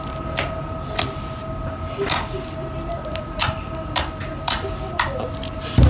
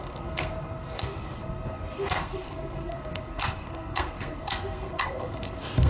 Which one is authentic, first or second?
first